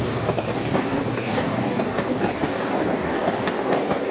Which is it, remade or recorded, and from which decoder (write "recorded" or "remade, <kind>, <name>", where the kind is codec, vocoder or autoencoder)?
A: remade, codec, DAC